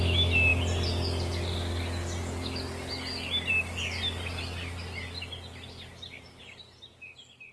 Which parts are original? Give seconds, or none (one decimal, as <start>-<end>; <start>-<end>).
0.0-7.5